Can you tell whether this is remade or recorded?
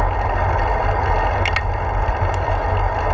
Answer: recorded